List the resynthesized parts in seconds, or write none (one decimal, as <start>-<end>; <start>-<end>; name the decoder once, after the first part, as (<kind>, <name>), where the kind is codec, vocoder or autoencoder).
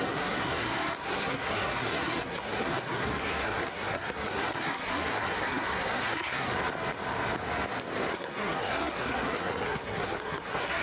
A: 0.0-6.5 (codec, SNAC); 8.1-10.8